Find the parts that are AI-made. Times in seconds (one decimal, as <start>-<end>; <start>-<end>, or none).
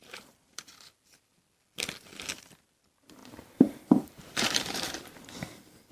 0.0-0.6; 3.2-4.9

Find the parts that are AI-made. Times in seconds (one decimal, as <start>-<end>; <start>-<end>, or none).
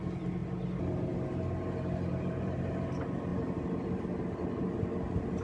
2.1-2.7; 3.3-3.9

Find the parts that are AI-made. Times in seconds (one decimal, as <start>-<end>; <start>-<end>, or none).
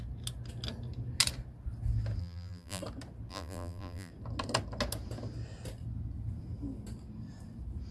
2.2-2.8; 3.3-4.1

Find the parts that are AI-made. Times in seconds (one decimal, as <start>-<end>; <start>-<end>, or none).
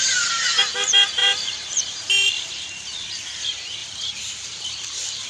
1.2-2.5; 3.8-4.6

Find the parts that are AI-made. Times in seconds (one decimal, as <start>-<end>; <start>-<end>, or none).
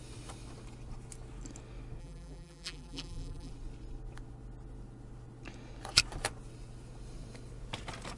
2.0-3.5